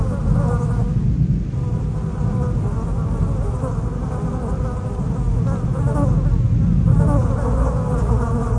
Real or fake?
real